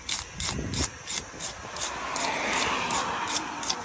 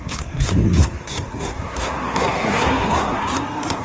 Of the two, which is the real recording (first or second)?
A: first